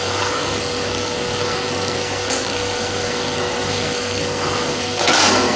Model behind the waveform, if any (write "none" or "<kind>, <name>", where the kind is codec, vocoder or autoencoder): codec, SNAC